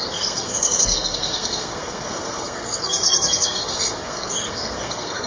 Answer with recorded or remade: remade